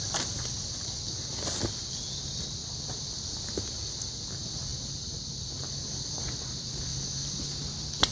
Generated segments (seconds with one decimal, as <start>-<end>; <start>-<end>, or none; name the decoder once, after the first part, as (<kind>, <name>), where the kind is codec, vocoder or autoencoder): 4.7-5.8 (vocoder, BigVGAN v2)

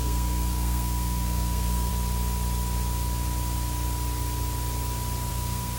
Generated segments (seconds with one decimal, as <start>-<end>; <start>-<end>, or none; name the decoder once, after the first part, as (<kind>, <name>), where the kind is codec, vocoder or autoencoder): 0.0-1.9 (codec, SNAC); 5.3-5.8

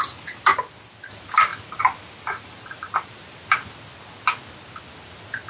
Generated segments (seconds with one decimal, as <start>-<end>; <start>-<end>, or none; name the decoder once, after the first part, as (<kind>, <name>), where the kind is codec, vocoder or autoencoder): none